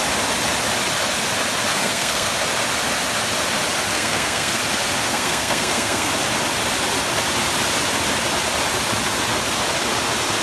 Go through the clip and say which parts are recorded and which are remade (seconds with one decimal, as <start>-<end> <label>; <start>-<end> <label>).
0.0-1.7 recorded; 1.7-2.3 remade; 2.3-3.9 recorded; 3.9-4.6 remade; 4.6-5.1 recorded; 5.1-6.1 remade; 6.1-10.4 recorded